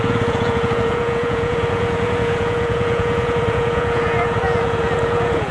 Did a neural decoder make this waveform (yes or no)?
yes